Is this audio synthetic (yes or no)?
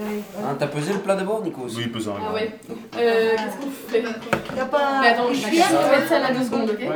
no